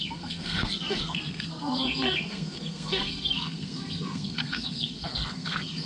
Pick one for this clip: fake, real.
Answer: fake